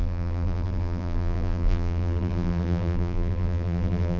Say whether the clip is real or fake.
fake